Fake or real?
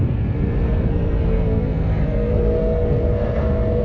fake